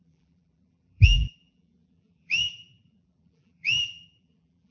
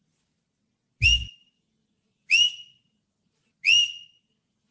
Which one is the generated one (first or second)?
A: first